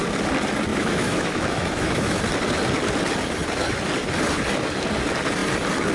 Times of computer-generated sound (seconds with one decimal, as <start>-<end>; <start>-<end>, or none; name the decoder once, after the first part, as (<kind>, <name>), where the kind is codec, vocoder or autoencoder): 0.7-2.2 (autoencoder, DAC-VAE)